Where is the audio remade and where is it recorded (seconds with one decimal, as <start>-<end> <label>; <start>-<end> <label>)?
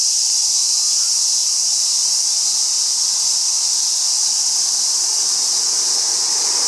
0.0-6.7 recorded